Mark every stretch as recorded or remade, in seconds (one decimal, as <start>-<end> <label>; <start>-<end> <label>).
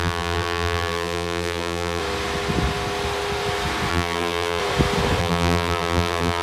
0.0-2.0 remade; 2.0-3.9 recorded; 3.9-4.6 remade; 4.6-5.2 recorded; 5.2-6.4 remade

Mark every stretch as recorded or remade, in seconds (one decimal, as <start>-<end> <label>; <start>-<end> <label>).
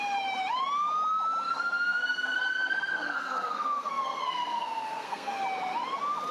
0.0-1.5 recorded; 1.5-5.3 remade; 5.3-6.3 recorded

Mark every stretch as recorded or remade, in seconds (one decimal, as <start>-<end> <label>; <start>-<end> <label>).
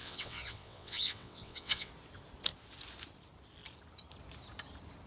0.0-1.9 remade; 1.9-5.1 recorded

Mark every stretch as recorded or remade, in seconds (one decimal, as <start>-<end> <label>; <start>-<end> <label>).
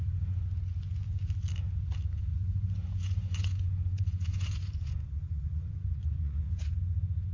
0.0-2.3 recorded; 2.3-6.7 remade; 6.7-7.3 recorded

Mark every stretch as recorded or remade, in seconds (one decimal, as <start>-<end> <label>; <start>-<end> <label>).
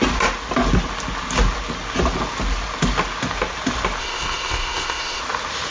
0.0-4.0 recorded; 4.0-5.2 remade; 5.2-5.7 recorded